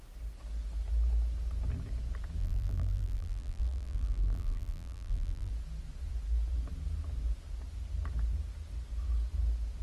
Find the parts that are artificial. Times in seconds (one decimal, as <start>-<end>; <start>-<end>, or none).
2.4-5.5